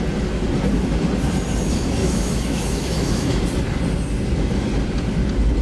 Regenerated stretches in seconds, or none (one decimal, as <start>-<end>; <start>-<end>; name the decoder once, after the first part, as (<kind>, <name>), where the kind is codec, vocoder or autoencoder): 2.0-3.4 (autoencoder, DAC-VAE)